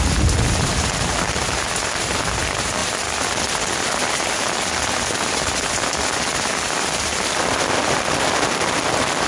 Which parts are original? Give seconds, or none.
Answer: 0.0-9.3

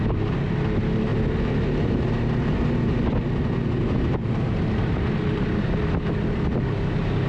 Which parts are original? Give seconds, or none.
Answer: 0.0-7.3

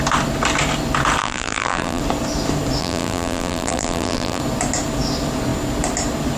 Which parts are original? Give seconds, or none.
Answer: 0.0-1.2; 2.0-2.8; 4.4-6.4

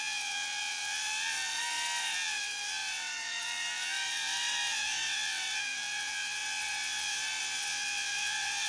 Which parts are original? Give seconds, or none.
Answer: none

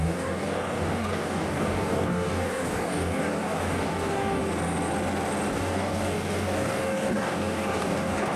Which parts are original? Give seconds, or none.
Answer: 4.4-5.5

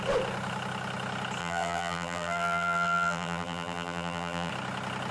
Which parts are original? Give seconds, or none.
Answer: 0.0-1.4; 4.5-5.1